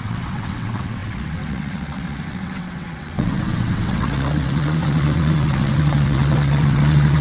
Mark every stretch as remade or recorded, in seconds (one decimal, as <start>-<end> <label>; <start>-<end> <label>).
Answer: 0.0-7.2 remade